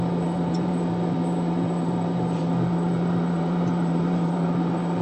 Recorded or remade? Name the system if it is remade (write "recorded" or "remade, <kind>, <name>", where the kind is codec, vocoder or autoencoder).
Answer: remade, vocoder, BigVGAN v2